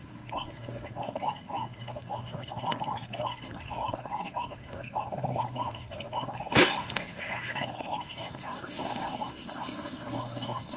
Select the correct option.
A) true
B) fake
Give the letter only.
B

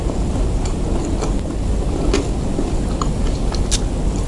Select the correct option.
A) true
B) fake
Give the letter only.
A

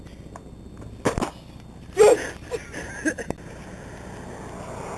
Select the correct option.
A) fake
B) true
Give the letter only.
B